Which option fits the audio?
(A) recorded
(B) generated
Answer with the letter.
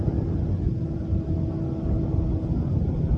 A